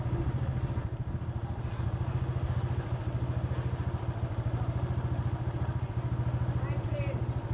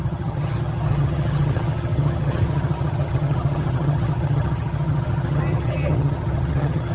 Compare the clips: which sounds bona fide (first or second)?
first